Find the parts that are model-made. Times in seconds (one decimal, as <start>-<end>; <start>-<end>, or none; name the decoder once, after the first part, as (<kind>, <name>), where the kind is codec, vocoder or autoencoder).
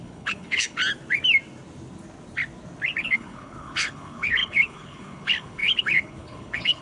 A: 0.0-0.8 (codec, HILCodec); 3.0-6.8